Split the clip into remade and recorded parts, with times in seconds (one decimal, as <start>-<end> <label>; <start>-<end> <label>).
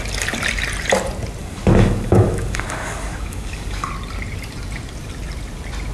0.0-1.4 recorded; 1.4-3.9 remade; 3.9-5.9 recorded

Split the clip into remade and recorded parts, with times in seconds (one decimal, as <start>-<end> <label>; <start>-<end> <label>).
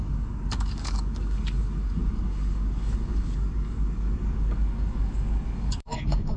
0.0-6.4 remade